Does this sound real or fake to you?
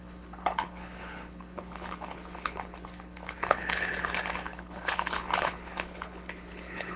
fake